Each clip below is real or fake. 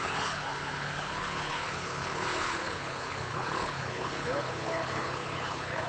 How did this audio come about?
fake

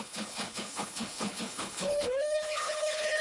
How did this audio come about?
fake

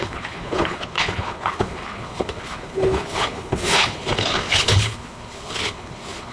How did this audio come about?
fake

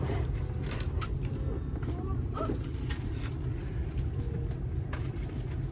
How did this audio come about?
real